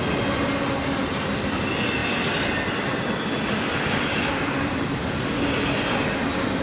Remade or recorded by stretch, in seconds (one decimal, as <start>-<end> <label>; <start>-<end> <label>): 0.0-6.6 recorded